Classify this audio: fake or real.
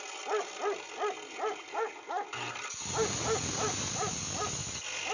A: real